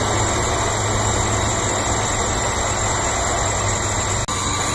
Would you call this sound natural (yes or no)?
yes